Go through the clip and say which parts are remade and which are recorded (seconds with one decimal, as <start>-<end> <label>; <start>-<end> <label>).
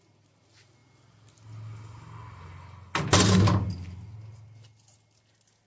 0.0-5.7 recorded